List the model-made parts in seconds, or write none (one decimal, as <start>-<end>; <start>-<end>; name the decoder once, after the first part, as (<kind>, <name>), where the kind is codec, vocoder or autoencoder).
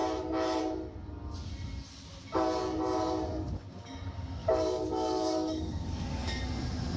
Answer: 4.4-6.4 (codec, DAC)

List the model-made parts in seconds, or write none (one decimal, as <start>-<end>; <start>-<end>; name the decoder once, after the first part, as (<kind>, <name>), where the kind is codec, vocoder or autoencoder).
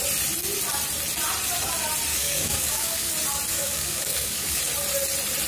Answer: 2.1-3.1 (codec, DAC); 3.5-4.6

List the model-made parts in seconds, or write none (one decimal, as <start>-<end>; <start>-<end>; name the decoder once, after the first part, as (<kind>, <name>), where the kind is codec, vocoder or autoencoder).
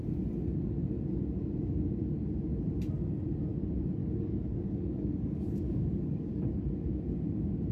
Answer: 4.0-6.4 (codec, DAC)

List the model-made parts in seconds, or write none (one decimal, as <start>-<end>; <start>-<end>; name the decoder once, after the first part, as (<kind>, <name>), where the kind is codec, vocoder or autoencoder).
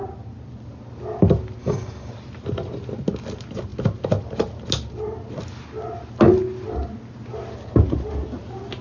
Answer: 1.6-2.1 (codec, DAC)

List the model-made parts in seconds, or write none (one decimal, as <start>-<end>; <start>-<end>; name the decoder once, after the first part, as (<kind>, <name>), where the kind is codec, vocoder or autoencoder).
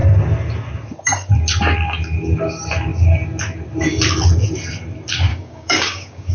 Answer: 5.3-6.3 (codec, DAC)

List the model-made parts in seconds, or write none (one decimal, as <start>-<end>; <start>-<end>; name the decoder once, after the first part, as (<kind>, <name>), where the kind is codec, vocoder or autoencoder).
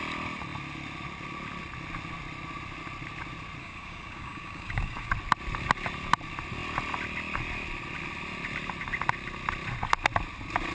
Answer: 3.6-5.1 (codec, DAC)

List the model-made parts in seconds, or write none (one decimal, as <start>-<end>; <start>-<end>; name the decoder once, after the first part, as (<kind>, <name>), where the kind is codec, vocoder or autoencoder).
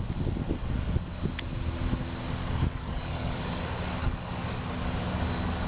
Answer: 2.4-3.6 (codec, DAC); 4.0-4.6